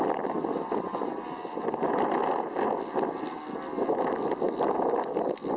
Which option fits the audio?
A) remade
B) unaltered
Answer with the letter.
B